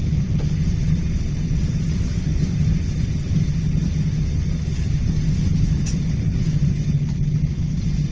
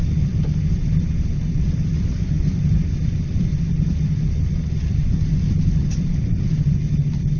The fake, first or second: second